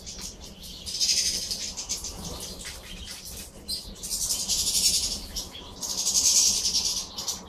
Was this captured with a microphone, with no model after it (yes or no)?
yes